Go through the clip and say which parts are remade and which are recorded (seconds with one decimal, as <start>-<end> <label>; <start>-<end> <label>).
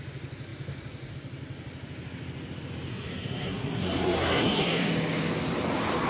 0.0-2.9 recorded; 2.9-4.9 remade; 4.9-6.1 recorded